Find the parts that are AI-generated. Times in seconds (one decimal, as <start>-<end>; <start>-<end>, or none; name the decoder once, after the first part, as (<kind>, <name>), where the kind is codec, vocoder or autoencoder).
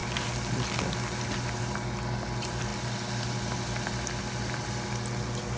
none